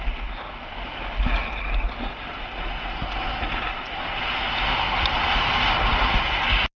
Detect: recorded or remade recorded